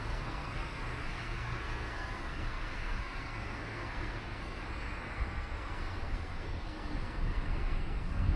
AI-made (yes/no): yes